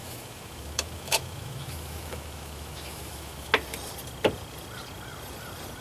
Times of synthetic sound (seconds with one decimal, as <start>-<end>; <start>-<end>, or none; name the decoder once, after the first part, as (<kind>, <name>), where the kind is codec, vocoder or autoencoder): 0.0-3.5 (autoencoder, DAC-VAE)